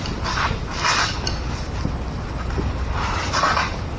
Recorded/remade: recorded